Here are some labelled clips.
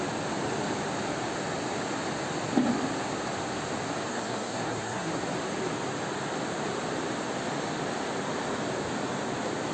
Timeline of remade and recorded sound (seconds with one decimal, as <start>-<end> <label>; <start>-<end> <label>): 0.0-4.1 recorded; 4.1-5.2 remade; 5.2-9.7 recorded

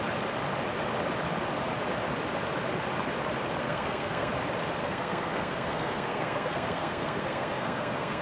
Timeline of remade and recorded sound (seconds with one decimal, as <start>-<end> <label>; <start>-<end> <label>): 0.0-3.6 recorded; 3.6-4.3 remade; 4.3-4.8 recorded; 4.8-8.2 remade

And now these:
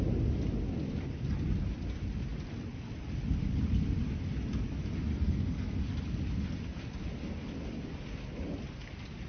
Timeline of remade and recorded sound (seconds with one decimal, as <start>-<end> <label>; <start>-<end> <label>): 0.0-5.1 recorded; 5.1-5.8 remade; 5.8-9.3 recorded